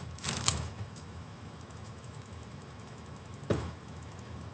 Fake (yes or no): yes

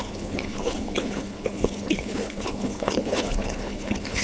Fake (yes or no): yes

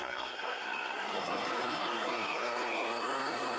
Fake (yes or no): yes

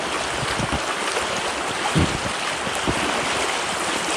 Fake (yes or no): no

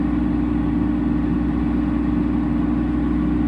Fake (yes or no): no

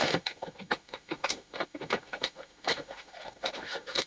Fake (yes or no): yes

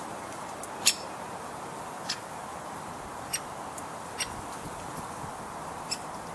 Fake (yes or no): no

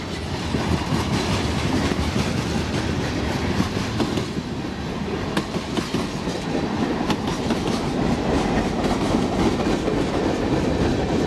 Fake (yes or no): no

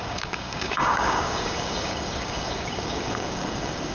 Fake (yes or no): yes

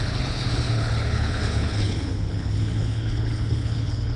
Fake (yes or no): yes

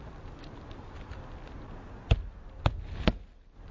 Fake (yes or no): no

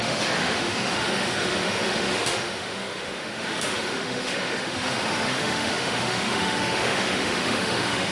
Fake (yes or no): yes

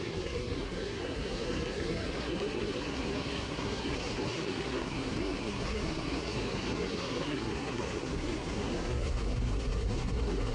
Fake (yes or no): yes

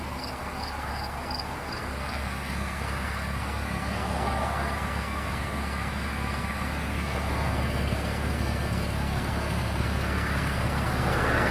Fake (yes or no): yes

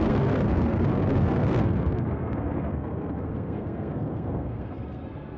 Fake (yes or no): yes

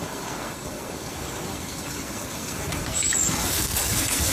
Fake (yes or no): yes